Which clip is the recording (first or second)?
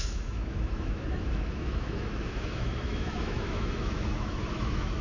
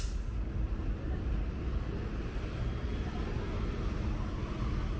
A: second